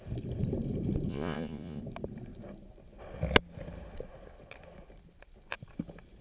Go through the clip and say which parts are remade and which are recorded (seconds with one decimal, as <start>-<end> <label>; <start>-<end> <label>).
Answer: 0.0-1.1 recorded; 1.1-1.8 remade; 1.8-6.2 recorded